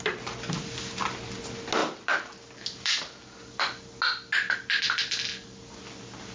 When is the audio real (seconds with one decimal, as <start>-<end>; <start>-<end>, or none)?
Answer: 0.0-6.3